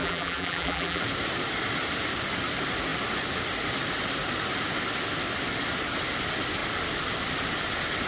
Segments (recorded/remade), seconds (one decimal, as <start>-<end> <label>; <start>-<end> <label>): 0.0-1.0 remade; 1.0-8.1 recorded